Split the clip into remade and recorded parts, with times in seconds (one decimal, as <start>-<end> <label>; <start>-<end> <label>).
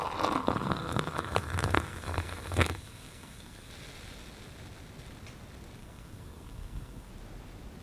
0.0-0.4 recorded; 0.4-3.7 remade; 3.7-5.8 recorded; 5.8-7.1 remade; 7.1-7.8 recorded